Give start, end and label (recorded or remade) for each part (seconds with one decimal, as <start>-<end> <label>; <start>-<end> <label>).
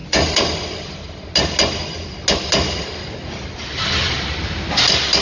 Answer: 0.0-5.2 recorded